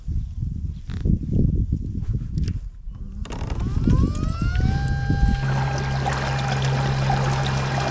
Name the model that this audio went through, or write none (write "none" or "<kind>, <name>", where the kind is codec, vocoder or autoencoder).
none